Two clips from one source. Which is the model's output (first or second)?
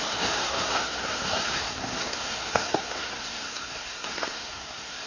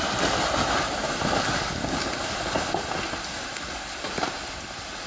first